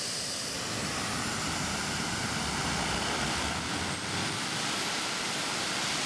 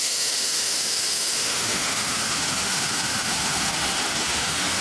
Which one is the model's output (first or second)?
second